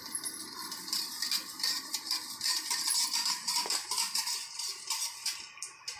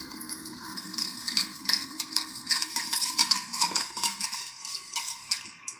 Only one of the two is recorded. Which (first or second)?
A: first